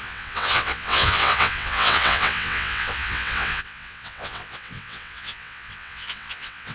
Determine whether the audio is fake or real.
fake